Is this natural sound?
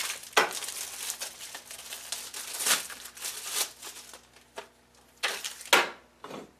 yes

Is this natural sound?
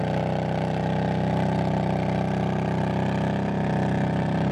yes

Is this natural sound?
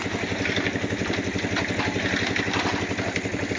yes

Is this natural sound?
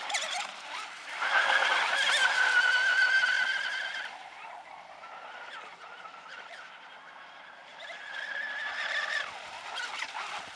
no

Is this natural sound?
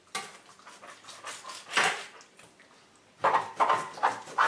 yes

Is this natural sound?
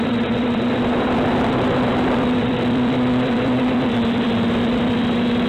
no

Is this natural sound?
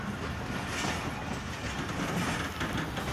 yes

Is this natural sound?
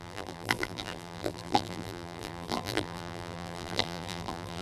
no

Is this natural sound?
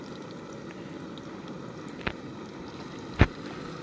no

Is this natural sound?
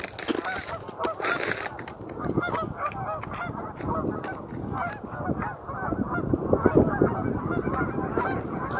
yes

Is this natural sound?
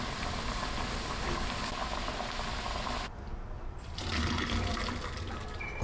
yes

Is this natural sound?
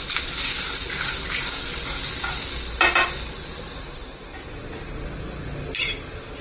yes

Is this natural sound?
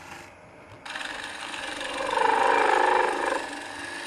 yes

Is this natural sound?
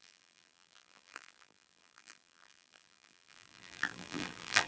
no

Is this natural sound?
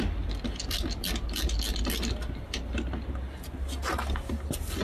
yes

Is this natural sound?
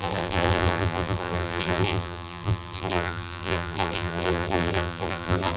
no